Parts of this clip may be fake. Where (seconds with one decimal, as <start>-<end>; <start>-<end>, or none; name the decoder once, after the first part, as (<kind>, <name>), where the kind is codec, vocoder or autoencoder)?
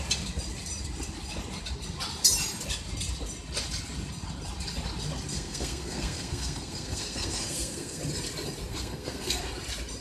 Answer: 5.3-8.0 (codec, SNAC); 8.7-9.4